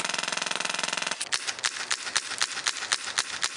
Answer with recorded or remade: recorded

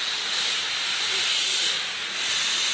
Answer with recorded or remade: recorded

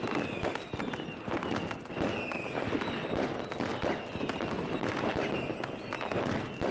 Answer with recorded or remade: recorded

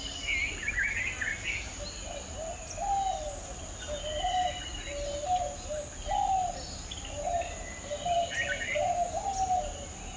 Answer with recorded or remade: recorded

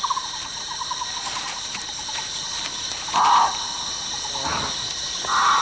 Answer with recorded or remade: recorded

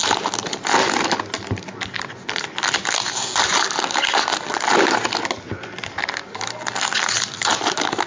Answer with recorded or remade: recorded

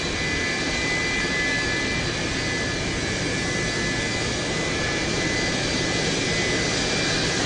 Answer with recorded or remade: recorded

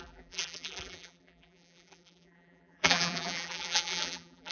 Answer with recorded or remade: remade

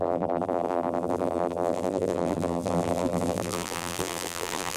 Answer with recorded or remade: remade